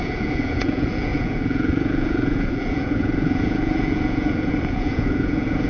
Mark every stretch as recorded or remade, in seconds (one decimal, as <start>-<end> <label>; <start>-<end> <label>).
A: 0.0-5.7 remade